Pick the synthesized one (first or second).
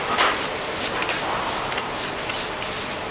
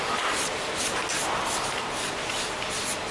second